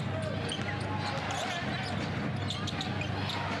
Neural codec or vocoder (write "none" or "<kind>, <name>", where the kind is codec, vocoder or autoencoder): none